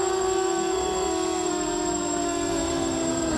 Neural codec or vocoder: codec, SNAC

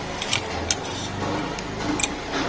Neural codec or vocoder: none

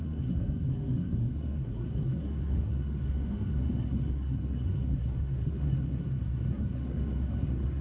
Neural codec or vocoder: codec, SNAC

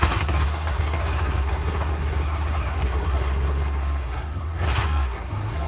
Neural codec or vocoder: codec, SNAC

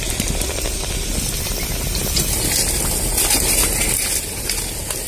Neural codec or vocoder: none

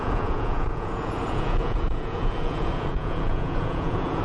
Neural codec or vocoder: vocoder, Vocos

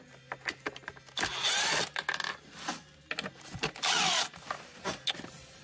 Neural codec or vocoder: none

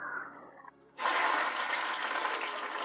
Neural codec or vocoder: none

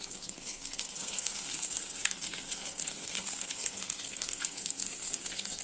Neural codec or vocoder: codec, SNAC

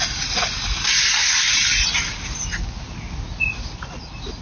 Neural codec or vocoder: none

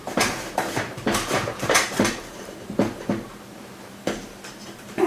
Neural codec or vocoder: vocoder, BigVGAN v2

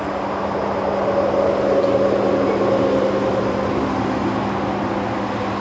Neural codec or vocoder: none